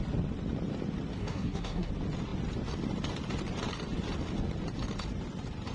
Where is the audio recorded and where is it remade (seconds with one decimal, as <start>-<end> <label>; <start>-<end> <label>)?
0.0-1.2 recorded; 1.2-1.9 remade; 1.9-5.7 recorded